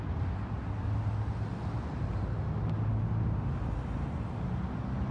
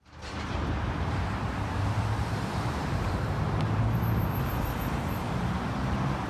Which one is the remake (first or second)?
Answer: second